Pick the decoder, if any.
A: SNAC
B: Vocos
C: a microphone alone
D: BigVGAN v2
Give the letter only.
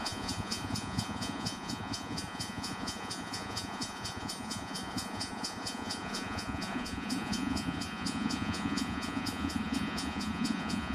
B